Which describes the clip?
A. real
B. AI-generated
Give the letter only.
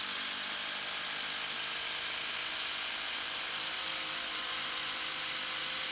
A